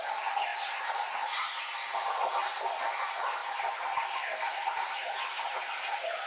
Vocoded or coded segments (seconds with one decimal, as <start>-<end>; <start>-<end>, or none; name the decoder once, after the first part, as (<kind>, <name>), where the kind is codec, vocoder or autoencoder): none